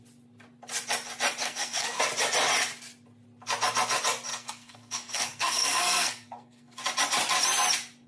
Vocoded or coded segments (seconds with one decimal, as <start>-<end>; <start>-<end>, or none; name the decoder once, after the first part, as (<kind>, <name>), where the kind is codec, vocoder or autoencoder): 1.4-2.0 (codec, SNAC); 4.3-6.8

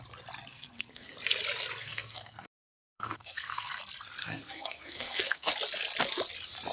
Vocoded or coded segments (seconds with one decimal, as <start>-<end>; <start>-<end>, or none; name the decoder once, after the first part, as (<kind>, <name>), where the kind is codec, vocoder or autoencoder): 0.5-1.1 (codec, SNAC); 1.8-3.8; 4.2-5.5

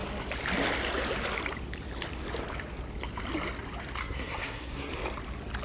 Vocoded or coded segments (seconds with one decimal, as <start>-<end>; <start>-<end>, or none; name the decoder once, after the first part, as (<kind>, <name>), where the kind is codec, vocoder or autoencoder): 4.0-4.9 (codec, SNAC)